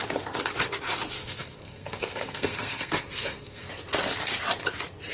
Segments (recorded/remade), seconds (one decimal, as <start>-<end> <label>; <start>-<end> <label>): 0.0-1.2 recorded; 1.2-3.7 remade; 3.7-5.1 recorded